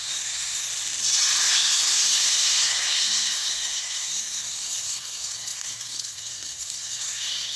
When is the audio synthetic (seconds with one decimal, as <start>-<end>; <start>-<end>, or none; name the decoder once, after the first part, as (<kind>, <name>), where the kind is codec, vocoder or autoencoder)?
0.0-0.7 (codec, SNAC); 1.5-7.6